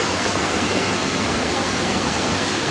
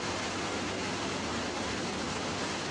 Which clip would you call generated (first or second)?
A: first